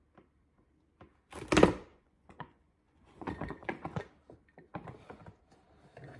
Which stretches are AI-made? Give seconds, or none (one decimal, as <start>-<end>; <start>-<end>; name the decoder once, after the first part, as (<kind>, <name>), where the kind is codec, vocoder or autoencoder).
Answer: 1.9-4.0 (vocoder, Vocos)